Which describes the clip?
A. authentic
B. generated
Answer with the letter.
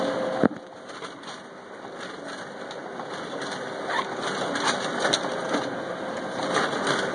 A